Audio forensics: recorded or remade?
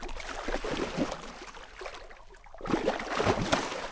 recorded